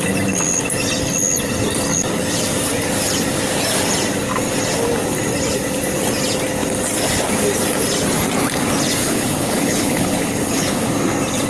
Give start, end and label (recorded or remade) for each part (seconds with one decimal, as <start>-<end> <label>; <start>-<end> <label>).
0.0-9.0 recorded; 9.0-10.9 remade; 10.9-11.5 recorded